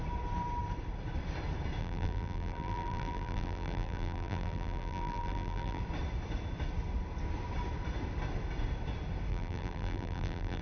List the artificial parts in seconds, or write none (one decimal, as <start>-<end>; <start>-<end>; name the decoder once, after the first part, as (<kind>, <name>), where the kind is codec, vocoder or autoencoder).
1.8-5.8 (vocoder, BigVGAN v2); 9.3-10.6